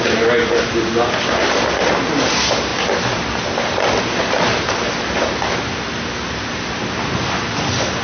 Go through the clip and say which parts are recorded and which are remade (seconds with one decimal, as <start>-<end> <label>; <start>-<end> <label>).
0.0-8.0 recorded

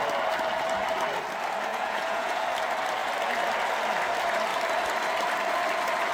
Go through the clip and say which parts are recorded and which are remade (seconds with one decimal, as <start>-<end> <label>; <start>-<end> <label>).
0.0-1.7 recorded; 1.7-2.4 remade; 2.4-6.1 recorded

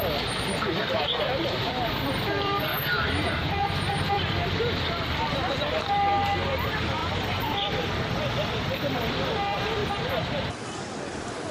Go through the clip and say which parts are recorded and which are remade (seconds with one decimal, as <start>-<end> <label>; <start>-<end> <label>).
0.0-9.8 remade; 9.8-10.5 recorded; 10.5-11.5 remade

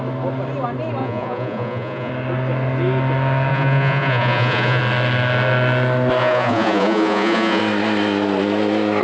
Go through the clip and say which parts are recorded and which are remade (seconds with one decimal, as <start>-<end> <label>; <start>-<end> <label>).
0.0-1.0 recorded; 1.0-2.1 remade; 2.1-3.5 recorded; 3.5-4.8 remade; 4.8-6.2 recorded; 6.2-7.6 remade; 7.6-9.0 recorded

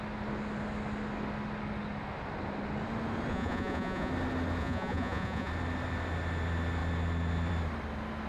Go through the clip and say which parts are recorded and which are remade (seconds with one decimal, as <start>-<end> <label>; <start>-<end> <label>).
0.0-3.3 recorded; 3.3-4.1 remade; 4.1-4.6 recorded; 4.6-5.5 remade; 5.5-8.3 recorded

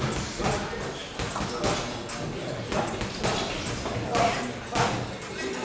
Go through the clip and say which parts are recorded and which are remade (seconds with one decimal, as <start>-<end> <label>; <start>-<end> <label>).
0.0-5.6 recorded